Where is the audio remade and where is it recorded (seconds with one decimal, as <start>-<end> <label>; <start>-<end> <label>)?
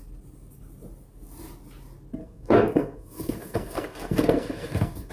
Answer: 0.0-2.2 recorded; 2.2-5.1 remade